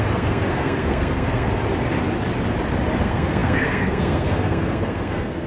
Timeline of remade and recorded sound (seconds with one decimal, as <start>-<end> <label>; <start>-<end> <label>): 0.0-1.6 remade; 1.6-3.0 recorded; 3.0-5.5 remade